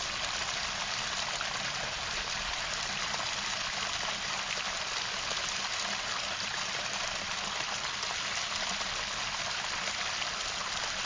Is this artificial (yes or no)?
no